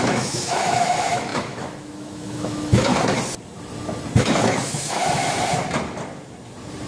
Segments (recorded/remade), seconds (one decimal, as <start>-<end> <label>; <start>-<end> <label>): 0.0-2.9 remade; 2.9-4.2 recorded; 4.2-5.0 remade; 5.0-6.9 recorded